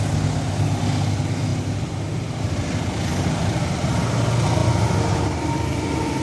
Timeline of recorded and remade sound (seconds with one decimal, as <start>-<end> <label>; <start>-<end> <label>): 0.0-3.1 recorded; 3.1-3.8 remade; 3.8-6.2 recorded